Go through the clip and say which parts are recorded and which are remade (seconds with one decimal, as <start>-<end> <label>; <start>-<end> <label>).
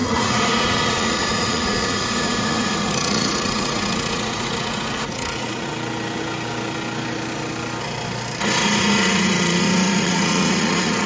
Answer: 0.0-5.7 remade; 5.7-8.8 recorded; 8.8-11.1 remade